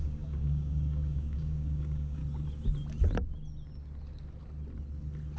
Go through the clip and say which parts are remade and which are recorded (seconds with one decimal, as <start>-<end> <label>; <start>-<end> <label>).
0.0-2.2 remade; 2.2-5.4 recorded